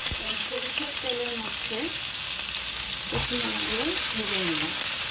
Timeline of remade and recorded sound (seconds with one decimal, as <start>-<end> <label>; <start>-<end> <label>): 0.0-1.0 remade; 1.0-5.1 recorded